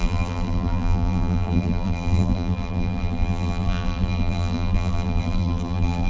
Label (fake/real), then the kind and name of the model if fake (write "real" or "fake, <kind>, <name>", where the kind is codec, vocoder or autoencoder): fake, vocoder, BigVGAN v2